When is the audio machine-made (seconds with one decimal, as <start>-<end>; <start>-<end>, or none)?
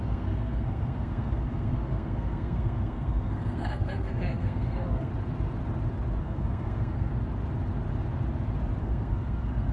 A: 0.0-5.1; 6.2-7.1; 8.8-9.7